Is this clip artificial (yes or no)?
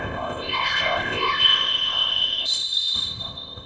yes